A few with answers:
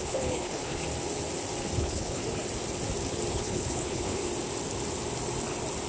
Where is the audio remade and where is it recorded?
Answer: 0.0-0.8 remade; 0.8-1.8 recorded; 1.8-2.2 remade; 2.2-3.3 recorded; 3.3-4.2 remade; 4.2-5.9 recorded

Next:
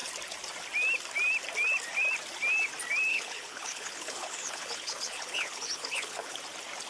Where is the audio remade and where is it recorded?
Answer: 0.0-3.1 recorded; 3.1-6.4 remade; 6.4-6.9 recorded

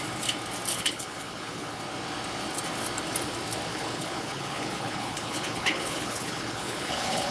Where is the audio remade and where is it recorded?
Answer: 0.0-0.7 recorded; 0.7-1.8 remade; 1.8-3.7 recorded; 3.7-7.3 remade

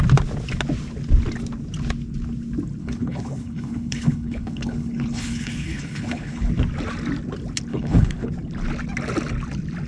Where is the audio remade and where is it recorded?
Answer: 0.0-2.8 recorded; 2.8-6.5 remade; 6.5-7.7 recorded; 7.7-8.3 remade; 8.3-9.9 recorded

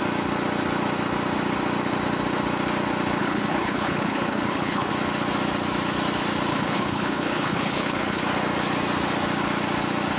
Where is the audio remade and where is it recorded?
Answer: 0.0-3.2 recorded; 3.2-4.9 remade; 4.9-6.5 recorded; 6.5-8.2 remade; 8.2-10.2 recorded